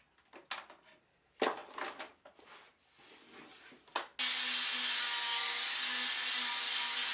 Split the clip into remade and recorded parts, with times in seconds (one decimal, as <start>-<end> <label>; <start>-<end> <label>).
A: 0.0-7.1 recorded